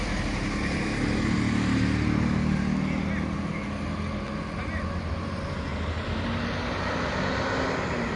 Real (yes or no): yes